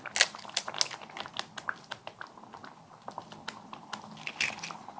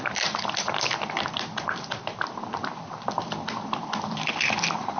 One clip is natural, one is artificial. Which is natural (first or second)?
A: first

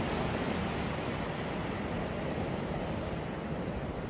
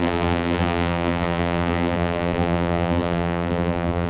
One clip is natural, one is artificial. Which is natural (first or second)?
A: first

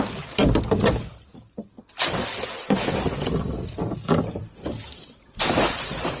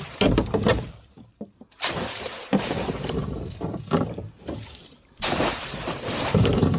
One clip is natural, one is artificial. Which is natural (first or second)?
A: first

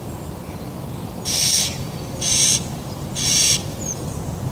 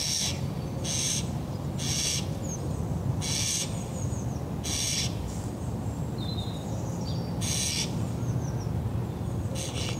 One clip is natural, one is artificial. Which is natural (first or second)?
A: second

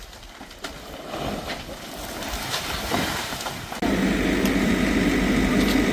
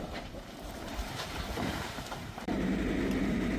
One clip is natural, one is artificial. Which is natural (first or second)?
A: first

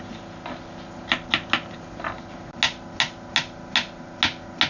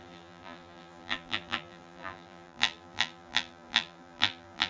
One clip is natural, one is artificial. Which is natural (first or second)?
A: first